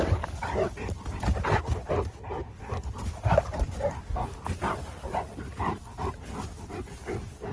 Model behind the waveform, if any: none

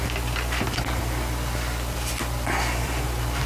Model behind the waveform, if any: none